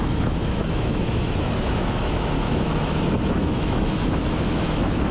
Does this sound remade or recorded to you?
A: remade